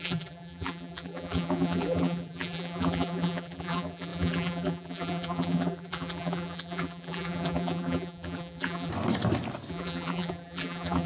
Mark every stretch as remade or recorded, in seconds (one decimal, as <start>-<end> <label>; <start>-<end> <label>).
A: 0.0-8.9 remade; 8.9-9.7 recorded; 9.7-11.1 remade